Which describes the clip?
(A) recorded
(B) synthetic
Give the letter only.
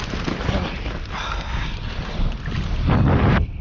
A